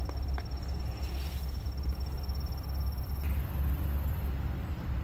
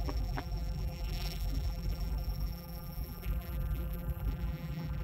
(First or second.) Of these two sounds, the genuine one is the first